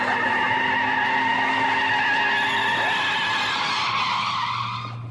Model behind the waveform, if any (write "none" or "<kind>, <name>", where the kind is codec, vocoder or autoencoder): none